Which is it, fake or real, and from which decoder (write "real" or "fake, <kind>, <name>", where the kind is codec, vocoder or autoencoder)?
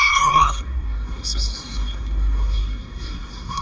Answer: fake, codec, SNAC